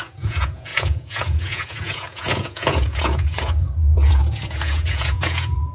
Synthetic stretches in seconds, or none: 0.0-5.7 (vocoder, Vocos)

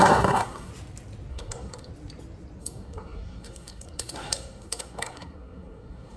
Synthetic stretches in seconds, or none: 0.0-0.7 (codec, SNAC); 1.3-1.9; 2.6-6.2

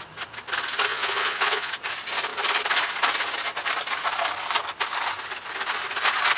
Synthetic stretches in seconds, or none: 0.9-1.7 (vocoder, Vocos)

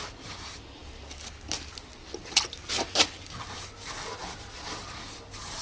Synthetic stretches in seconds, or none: 0.0-0.8 (vocoder, BigVGAN v2); 4.2-5.6

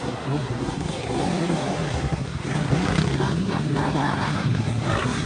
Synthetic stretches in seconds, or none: 0.0-5.3 (codec, SNAC)

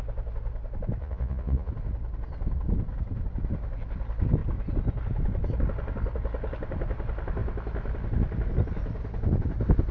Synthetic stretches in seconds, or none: 1.0-1.7 (vocoder, Vocos)

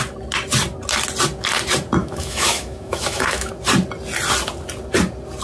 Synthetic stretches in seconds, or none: 2.0-3.5 (autoencoder, DAC-VAE)